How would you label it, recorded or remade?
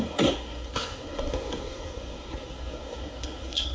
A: remade